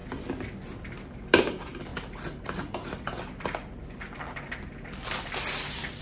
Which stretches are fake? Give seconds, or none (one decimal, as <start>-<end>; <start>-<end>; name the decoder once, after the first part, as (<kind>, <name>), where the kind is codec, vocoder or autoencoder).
none